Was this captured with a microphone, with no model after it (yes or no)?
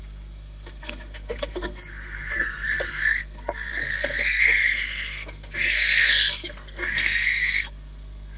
no